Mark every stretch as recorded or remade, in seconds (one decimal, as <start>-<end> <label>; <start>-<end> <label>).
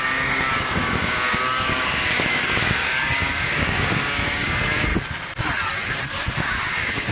0.0-4.9 remade; 4.9-6.4 recorded; 6.4-7.1 remade